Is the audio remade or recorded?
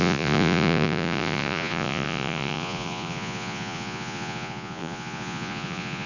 remade